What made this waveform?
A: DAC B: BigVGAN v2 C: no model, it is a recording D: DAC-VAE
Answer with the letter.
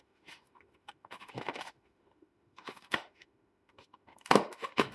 D